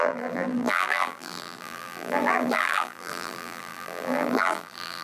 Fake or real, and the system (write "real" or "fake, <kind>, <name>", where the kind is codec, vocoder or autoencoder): fake, vocoder, BigVGAN v2